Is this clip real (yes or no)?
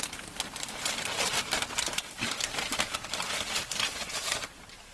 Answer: no